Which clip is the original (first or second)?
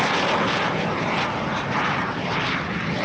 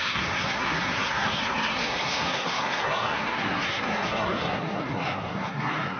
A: first